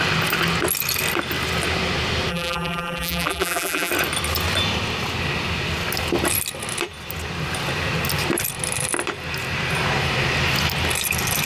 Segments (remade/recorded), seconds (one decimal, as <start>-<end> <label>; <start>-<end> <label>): 0.0-2.3 recorded; 2.3-3.9 remade; 3.9-11.4 recorded

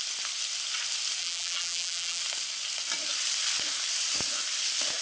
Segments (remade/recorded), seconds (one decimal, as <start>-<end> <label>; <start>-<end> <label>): 0.0-1.2 recorded; 1.2-2.2 remade; 2.2-5.0 recorded

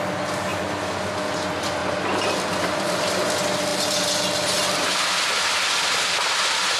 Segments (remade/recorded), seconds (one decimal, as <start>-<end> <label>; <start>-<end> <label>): 0.0-1.8 recorded; 1.8-3.1 remade; 3.1-3.7 recorded; 3.7-4.6 remade; 4.6-6.8 recorded

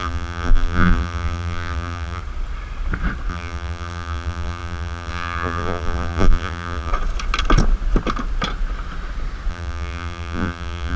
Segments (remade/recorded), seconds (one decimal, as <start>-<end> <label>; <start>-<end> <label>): 0.0-2.2 remade; 2.2-3.3 recorded; 3.3-6.9 remade; 6.9-9.5 recorded; 9.5-11.0 remade